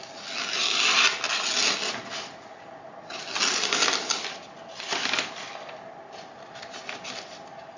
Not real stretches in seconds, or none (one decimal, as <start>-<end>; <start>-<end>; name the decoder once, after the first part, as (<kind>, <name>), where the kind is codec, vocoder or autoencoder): none